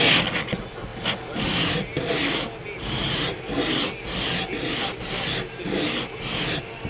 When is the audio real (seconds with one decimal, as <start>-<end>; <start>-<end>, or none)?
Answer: 0.0-6.9